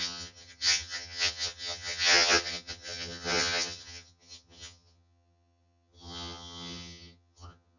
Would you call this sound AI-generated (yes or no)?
yes